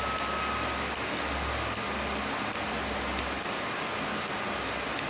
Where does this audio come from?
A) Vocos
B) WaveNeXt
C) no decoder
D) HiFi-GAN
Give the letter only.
C